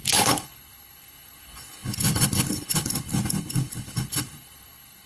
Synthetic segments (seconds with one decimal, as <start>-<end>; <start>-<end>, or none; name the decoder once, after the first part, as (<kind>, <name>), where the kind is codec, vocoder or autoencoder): 0.0-5.1 (codec, HILCodec)